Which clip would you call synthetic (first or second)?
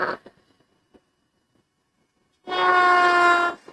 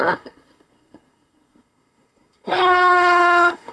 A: second